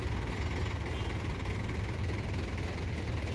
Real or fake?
real